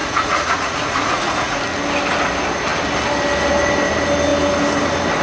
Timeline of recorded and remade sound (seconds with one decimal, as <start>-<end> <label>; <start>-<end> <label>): 0.0-1.6 remade; 1.6-5.2 recorded